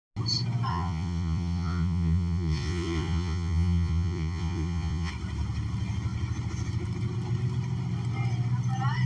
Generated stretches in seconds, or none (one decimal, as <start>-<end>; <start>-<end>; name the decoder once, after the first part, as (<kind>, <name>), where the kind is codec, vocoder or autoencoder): 0.7-5.1 (vocoder, Vocos)